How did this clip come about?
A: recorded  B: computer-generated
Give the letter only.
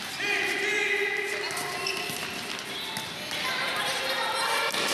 A